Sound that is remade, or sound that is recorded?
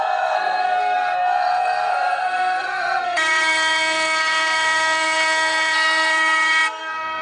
remade